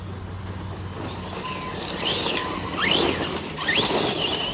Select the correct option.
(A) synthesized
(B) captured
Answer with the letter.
B